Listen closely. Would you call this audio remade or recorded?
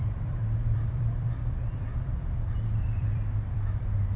remade